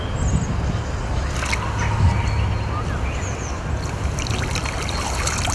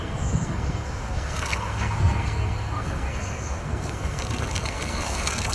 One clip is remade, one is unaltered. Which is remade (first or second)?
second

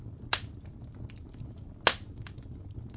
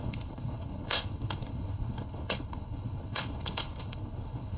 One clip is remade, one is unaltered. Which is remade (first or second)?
second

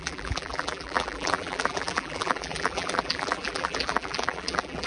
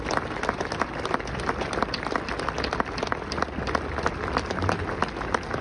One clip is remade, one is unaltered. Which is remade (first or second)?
first